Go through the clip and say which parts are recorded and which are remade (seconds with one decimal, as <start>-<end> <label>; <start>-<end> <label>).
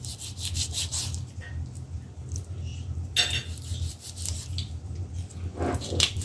0.0-2.7 remade; 2.7-4.9 recorded; 4.9-6.2 remade